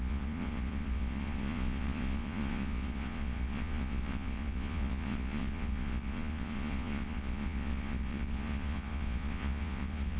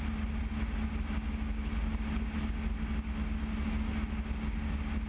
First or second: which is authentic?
second